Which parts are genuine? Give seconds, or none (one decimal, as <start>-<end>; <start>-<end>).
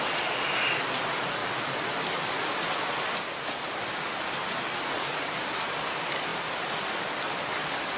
0.0-8.0